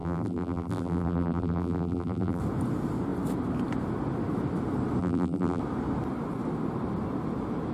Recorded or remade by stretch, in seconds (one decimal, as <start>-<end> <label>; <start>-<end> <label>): 0.0-2.4 remade; 2.4-5.0 recorded; 5.0-5.6 remade; 5.6-7.7 recorded